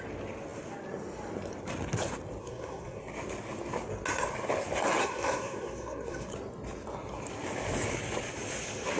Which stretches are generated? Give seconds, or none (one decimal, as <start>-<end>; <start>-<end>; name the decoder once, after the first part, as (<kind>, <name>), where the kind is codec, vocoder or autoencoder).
2.4-3.0 (codec, SNAC); 5.0-6.3

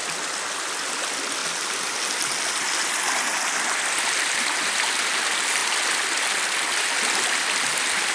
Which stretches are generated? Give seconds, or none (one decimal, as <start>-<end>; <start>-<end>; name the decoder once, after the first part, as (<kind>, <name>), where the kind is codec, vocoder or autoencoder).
none